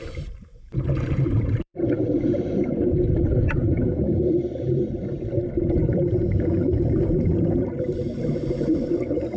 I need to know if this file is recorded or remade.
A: remade